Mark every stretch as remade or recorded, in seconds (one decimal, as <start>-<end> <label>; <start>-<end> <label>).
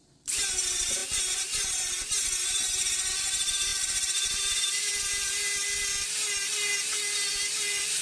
0.0-1.0 remade; 1.0-3.1 recorded; 3.1-4.9 remade; 4.9-7.3 recorded; 7.3-8.0 remade